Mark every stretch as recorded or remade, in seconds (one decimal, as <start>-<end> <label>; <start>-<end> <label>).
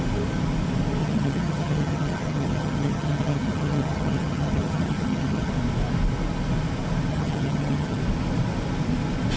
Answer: 0.0-1.0 recorded; 1.0-5.5 remade; 5.5-7.1 recorded; 7.1-8.0 remade; 8.0-9.4 recorded